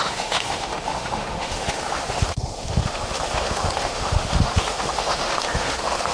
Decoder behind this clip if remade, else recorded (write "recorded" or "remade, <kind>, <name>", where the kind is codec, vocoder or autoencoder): remade, autoencoder, DAC-VAE